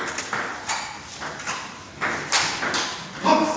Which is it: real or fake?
real